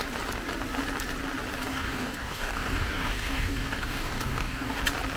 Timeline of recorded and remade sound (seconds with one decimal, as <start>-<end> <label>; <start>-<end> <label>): 0.0-1.7 recorded; 1.7-4.8 remade; 4.8-5.2 recorded

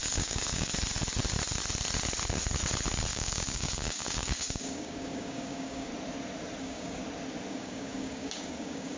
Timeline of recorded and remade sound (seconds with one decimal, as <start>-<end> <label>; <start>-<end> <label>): 0.0-0.7 remade; 0.7-3.1 recorded; 3.1-5.9 remade; 5.9-6.6 recorded; 6.6-7.0 remade; 7.0-7.5 recorded; 7.5-9.0 remade